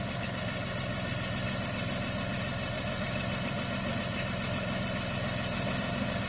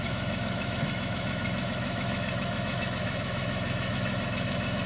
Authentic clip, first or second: first